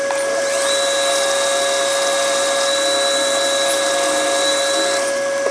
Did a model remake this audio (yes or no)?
no